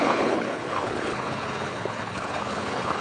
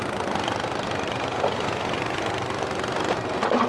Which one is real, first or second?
second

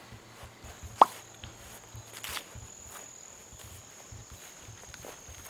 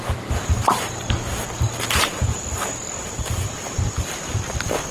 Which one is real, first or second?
first